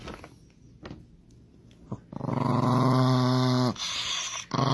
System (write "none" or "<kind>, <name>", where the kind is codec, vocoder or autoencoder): none